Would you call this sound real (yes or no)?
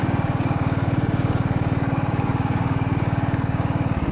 no